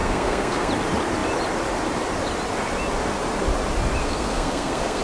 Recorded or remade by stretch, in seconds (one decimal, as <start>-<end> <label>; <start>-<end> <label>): 0.0-0.7 remade; 0.7-4.0 recorded; 4.0-5.0 remade